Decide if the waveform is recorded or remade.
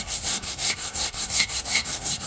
remade